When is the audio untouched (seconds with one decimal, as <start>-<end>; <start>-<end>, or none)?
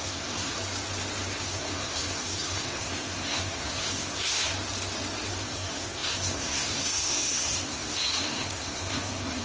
0.5-1.4; 4.5-5.3